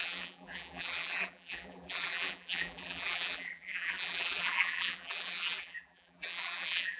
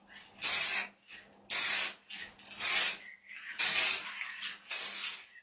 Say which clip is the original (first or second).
second